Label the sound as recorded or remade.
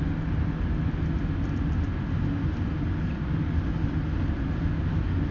recorded